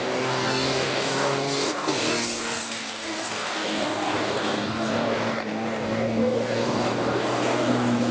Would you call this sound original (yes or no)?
no